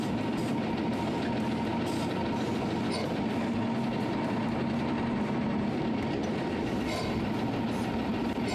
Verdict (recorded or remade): recorded